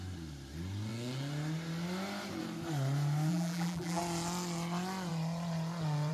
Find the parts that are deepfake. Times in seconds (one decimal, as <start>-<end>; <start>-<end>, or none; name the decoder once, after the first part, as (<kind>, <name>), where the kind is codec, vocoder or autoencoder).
3.3-4.0 (vocoder, BigVGAN v2)